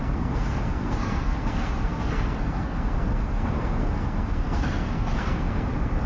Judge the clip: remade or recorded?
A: remade